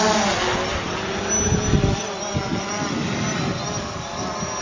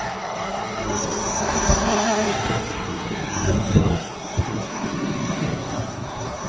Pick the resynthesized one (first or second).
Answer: second